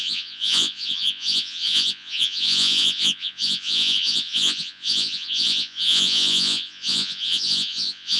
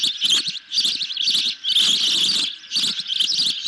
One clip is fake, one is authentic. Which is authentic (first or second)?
second